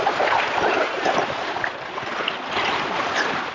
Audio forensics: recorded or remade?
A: remade